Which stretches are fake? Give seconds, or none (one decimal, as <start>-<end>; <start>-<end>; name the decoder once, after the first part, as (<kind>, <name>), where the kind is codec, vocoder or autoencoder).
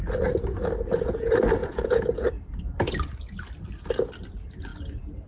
1.6-2.3 (vocoder, Vocos)